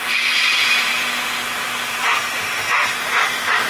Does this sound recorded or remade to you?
recorded